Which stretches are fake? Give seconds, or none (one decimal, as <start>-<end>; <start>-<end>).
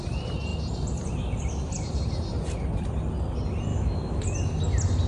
3.7-4.2